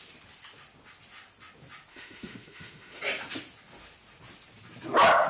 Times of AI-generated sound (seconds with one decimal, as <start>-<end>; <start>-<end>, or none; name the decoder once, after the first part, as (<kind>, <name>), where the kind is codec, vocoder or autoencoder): 1.9-3.0 (autoencoder, DAC-VAE)